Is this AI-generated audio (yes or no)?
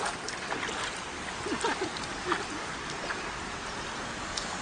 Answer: no